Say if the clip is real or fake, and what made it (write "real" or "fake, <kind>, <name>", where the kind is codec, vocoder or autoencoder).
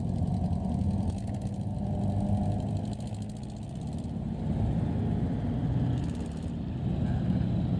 real